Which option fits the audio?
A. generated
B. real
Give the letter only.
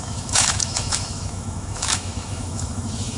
A